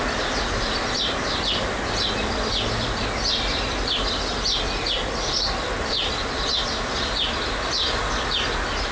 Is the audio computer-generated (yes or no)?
no